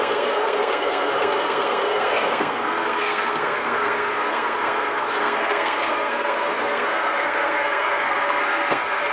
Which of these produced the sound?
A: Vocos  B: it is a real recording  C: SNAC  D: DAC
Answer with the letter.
C